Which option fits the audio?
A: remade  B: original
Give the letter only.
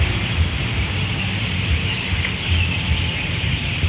B